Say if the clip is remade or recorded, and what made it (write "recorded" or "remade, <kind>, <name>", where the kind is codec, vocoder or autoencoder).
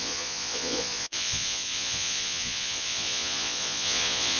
remade, vocoder, Vocos